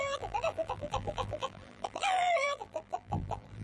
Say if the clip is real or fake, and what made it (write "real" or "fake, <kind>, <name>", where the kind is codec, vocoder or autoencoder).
fake, vocoder, BigVGAN v2